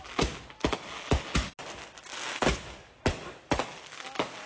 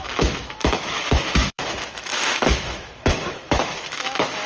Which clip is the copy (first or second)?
second